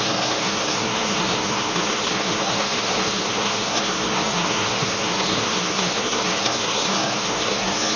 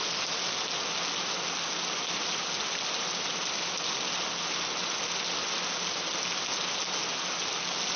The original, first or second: second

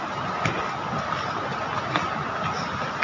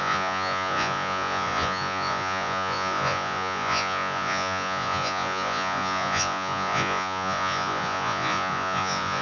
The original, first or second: first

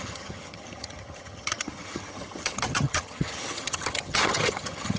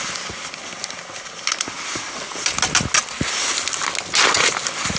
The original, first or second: second